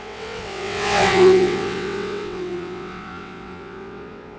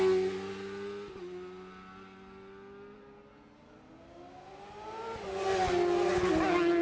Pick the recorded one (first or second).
second